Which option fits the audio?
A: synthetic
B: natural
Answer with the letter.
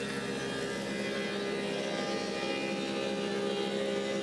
B